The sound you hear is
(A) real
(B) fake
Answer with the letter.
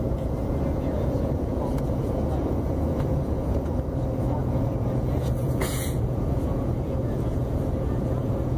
B